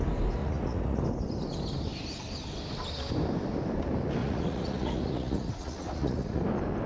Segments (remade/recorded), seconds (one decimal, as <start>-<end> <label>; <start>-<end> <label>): 0.0-0.4 recorded; 0.4-1.0 remade; 1.0-4.2 recorded; 4.2-6.4 remade; 6.4-6.9 recorded